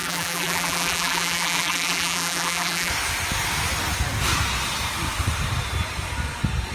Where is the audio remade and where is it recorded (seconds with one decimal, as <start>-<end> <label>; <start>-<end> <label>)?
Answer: 0.0-2.9 remade; 2.9-6.7 recorded